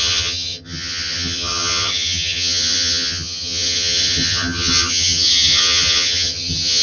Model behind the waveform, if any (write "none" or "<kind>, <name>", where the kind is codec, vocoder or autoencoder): vocoder, HiFi-GAN